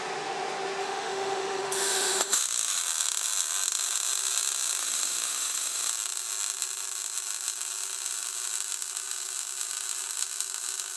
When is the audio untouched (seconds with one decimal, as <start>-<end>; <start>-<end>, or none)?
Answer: 0.0-0.8; 2.8-4.8; 5.9-11.0